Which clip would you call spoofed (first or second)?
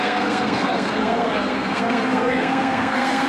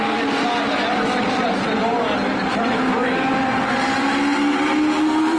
first